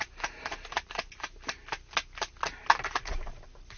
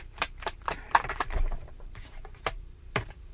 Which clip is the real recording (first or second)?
first